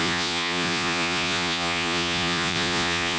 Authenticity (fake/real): fake